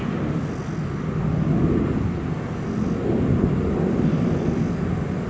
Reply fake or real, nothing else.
real